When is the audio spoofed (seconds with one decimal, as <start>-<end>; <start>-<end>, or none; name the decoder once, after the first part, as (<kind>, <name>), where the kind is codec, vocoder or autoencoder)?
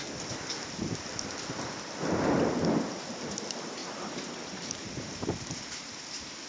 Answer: 3.8-5.6 (vocoder, BigVGAN v2)